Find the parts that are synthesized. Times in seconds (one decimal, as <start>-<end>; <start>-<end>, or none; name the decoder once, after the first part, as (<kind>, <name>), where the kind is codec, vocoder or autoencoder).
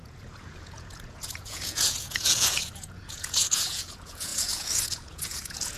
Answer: 0.0-5.8 (vocoder, Vocos)